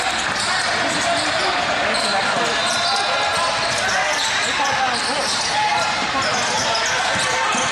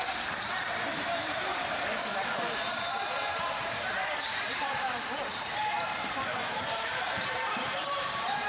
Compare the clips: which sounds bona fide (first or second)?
first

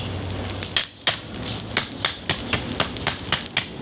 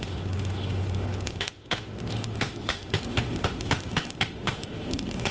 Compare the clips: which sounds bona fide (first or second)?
first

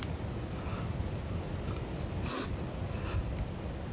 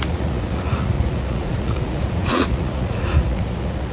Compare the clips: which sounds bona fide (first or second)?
first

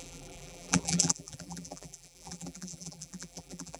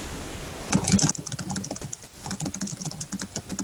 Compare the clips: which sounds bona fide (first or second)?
second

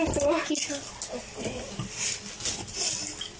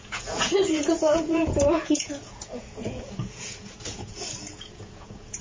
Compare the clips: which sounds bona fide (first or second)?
first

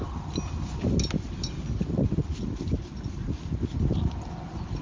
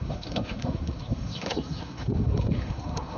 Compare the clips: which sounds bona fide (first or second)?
first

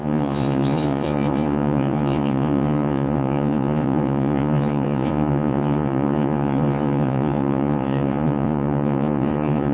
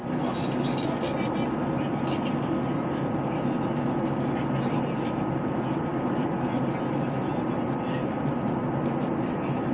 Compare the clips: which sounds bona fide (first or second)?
second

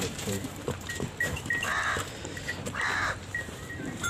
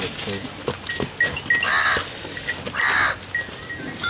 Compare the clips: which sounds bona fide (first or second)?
second